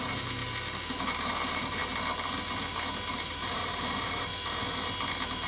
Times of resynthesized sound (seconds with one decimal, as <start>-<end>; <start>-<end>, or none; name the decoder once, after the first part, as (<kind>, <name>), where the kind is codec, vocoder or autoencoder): 0.0-0.4 (vocoder, BigVGAN v2); 1.0-1.8; 3.1-4.3; 5.1-5.5